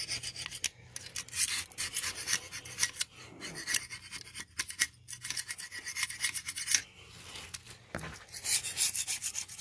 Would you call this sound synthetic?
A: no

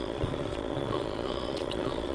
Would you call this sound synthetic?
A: yes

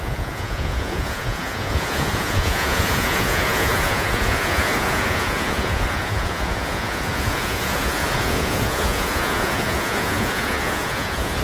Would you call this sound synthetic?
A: yes